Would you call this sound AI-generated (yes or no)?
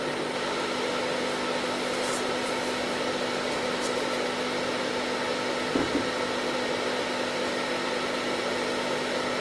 no